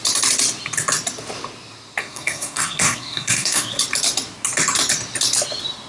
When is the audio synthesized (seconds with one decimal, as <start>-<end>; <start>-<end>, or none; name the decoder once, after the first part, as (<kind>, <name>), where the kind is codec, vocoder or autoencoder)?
2.0-3.7 (codec, SNAC)